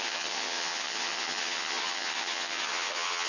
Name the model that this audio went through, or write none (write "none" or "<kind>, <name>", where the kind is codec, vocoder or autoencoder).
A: vocoder, HiFi-GAN